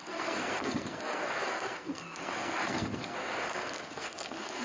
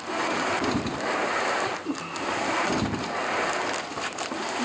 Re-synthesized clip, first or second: first